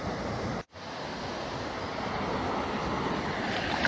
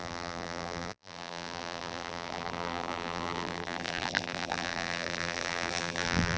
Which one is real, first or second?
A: first